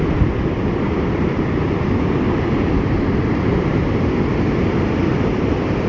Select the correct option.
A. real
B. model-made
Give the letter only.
A